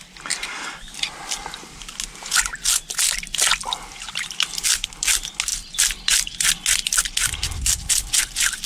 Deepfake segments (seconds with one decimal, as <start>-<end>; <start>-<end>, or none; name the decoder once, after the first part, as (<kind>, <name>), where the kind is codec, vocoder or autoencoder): 5.5-6.5 (vocoder, BigVGAN v2)